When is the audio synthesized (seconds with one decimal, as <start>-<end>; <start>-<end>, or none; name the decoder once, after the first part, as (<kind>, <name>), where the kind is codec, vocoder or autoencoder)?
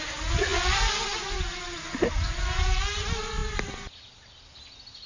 none